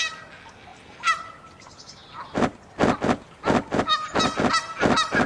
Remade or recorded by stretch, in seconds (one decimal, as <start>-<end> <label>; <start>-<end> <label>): 0.0-0.7 recorded; 0.7-1.6 remade; 1.6-5.3 recorded